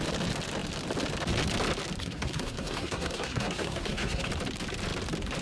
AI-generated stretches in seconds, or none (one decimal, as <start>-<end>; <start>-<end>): 2.0-4.3